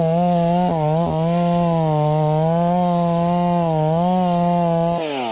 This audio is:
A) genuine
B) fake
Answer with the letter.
A